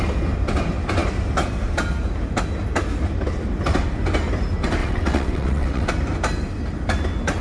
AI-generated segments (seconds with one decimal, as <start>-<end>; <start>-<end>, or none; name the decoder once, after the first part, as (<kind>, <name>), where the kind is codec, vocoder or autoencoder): 4.8-5.9 (vocoder, WaveNeXt)